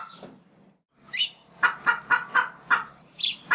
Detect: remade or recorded recorded